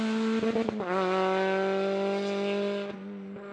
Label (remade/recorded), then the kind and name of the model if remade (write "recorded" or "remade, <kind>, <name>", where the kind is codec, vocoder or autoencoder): recorded